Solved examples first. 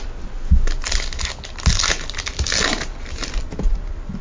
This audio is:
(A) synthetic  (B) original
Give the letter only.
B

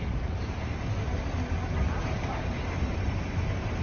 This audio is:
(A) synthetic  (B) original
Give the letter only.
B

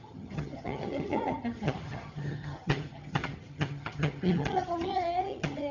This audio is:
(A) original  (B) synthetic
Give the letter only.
B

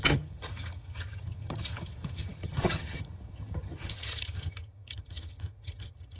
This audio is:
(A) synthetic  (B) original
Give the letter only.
A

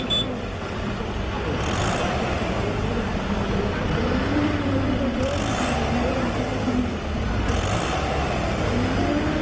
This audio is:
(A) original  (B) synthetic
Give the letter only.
A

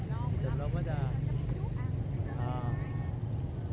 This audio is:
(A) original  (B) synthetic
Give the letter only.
A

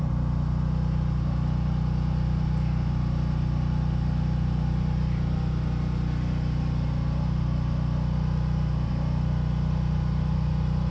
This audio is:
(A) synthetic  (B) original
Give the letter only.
B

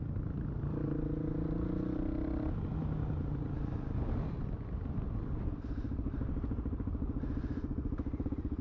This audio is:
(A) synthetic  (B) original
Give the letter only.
B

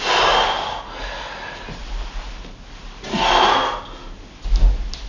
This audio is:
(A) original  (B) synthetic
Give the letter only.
A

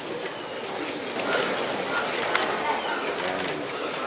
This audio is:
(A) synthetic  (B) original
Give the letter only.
B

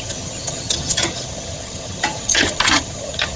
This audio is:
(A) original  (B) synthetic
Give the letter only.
B